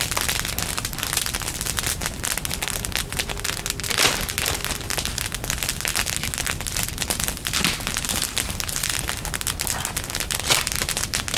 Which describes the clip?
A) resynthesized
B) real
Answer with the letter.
B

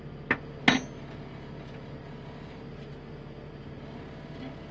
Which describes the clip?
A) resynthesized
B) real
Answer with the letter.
B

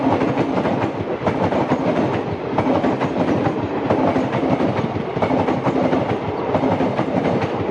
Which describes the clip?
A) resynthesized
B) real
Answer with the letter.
B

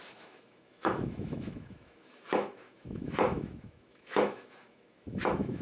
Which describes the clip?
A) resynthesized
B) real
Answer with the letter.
A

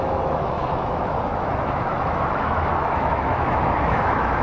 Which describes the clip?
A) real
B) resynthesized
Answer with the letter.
B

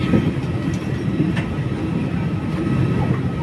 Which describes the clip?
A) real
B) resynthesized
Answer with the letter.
A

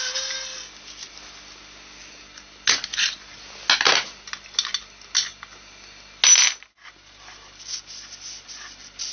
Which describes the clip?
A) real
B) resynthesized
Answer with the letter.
A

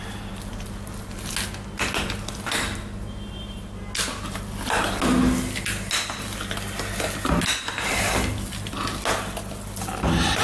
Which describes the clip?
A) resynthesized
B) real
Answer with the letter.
B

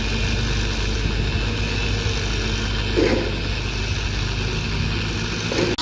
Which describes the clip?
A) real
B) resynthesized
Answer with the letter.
A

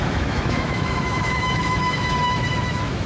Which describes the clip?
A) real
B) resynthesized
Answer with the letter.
B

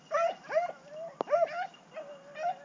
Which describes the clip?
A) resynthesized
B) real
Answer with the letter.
B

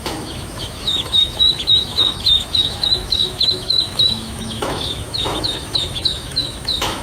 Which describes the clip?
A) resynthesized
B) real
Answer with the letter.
A